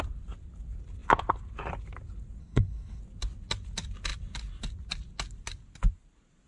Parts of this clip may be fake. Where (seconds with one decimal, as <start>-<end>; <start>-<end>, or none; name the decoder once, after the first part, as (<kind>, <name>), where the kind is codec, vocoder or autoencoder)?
2.4-3.0 (codec, HILCodec)